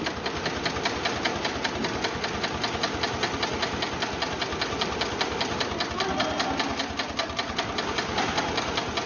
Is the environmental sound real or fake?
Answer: real